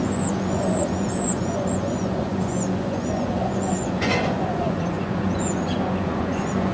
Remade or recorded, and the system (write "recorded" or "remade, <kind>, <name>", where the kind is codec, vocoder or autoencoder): remade, vocoder, Vocos